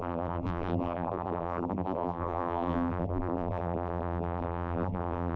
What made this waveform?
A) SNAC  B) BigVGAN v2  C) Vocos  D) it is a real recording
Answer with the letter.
B